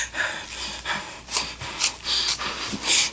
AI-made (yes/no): no